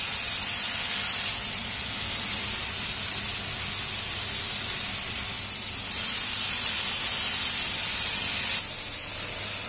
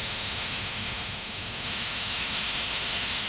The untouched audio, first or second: first